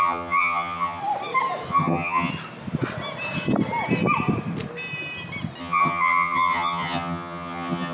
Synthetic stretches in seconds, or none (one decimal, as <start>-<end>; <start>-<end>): 0.0-1.0; 1.7-2.3; 5.6-7.9